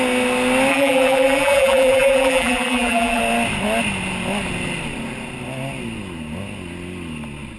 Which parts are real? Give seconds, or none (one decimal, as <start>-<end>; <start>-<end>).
0.0-0.7; 3.2-7.6